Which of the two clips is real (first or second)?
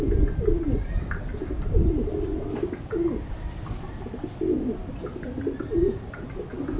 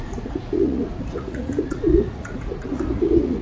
first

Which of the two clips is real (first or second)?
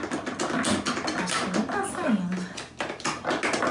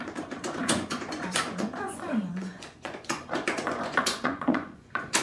first